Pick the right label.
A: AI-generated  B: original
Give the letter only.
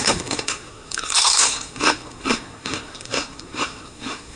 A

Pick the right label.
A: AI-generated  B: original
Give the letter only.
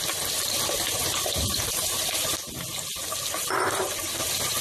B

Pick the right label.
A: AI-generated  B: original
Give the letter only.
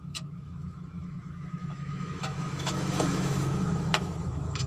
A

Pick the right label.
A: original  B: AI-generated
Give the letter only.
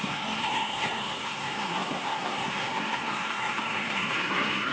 B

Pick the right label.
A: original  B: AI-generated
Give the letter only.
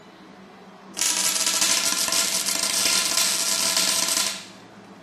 A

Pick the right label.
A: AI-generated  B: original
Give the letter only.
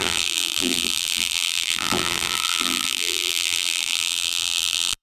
A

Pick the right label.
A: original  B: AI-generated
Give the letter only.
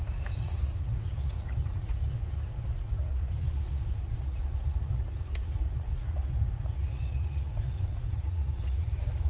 B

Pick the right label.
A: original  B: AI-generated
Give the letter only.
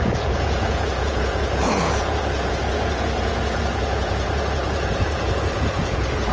B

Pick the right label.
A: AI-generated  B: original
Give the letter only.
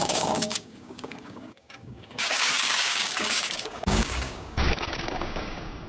A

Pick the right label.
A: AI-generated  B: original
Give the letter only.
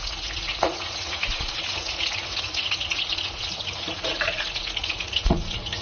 A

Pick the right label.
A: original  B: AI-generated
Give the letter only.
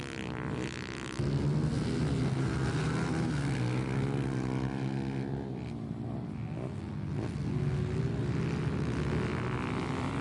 A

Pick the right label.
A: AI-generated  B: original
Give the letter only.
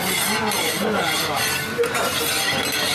B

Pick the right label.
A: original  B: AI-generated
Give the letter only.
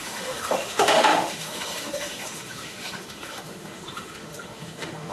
B